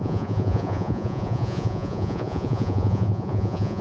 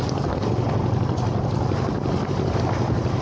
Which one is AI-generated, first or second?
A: first